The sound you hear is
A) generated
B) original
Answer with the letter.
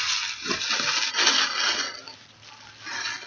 B